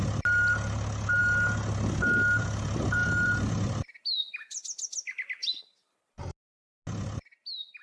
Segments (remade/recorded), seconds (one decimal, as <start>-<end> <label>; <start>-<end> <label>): 0.0-3.0 recorded; 3.0-4.0 remade; 4.0-7.8 recorded